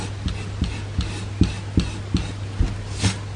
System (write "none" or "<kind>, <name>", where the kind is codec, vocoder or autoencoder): none